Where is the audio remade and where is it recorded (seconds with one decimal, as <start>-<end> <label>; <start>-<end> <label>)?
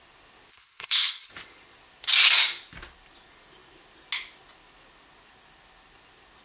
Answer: 0.0-0.5 recorded; 0.5-1.3 remade; 1.3-6.4 recorded